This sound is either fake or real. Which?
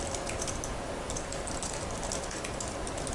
real